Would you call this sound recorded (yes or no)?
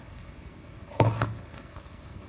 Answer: no